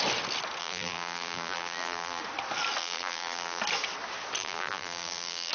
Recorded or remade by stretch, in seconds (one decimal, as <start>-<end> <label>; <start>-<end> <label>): 0.0-0.6 recorded; 0.6-2.2 remade; 2.2-2.8 recorded; 2.8-3.6 remade; 3.6-4.4 recorded; 4.4-5.5 remade